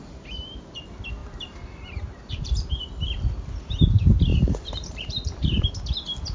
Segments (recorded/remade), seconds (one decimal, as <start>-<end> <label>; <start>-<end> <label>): 0.0-1.2 recorded; 1.2-2.9 remade; 2.9-4.3 recorded; 4.3-5.7 remade; 5.7-6.3 recorded